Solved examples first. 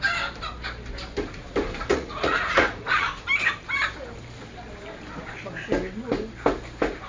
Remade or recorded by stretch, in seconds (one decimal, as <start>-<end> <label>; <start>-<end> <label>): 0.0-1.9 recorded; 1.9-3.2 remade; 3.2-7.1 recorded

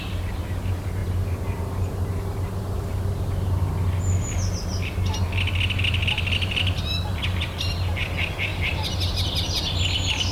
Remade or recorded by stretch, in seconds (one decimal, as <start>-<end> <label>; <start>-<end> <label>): 0.0-10.3 recorded

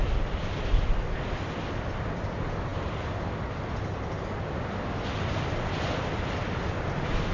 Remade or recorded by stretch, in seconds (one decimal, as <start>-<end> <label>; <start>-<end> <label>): 0.0-7.3 recorded

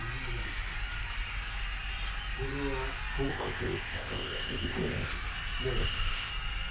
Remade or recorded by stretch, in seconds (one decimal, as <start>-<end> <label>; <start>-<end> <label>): 0.0-3.3 recorded; 3.3-5.1 remade; 5.1-5.8 recorded; 5.8-6.3 remade; 6.3-6.7 recorded

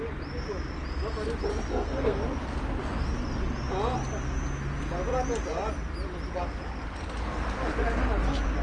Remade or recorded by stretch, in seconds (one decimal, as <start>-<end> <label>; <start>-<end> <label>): 0.0-1.7 recorded; 1.7-2.2 remade; 2.2-8.6 recorded